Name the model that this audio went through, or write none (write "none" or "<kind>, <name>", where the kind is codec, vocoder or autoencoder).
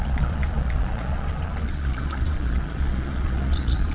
vocoder, Vocos